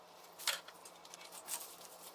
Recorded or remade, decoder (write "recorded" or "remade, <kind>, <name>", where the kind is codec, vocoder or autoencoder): recorded